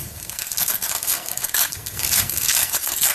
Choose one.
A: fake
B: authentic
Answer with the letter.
A